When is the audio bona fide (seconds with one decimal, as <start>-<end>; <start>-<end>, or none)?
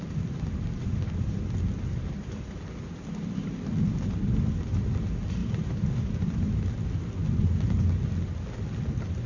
0.0-5.4; 6.5-9.3